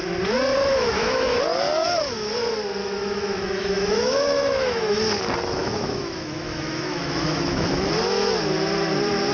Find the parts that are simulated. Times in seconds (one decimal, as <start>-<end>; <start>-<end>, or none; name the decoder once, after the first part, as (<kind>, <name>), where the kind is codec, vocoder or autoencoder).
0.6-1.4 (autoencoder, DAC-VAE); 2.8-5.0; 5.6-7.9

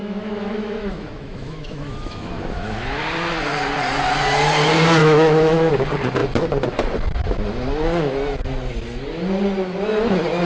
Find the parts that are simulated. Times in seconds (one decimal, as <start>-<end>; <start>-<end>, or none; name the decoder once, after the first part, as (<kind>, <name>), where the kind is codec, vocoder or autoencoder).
0.0-3.0 (autoencoder, DAC-VAE); 5.0-5.7

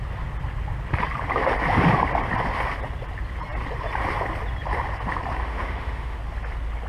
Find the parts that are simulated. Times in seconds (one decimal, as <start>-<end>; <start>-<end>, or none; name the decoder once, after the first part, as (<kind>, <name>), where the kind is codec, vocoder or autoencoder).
5.4-6.2 (autoencoder, DAC-VAE)

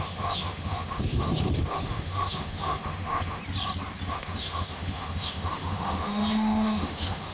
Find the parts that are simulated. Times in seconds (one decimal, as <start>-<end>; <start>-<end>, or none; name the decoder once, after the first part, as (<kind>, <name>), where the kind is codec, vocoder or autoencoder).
0.0-3.4 (autoencoder, DAC-VAE); 4.1-7.3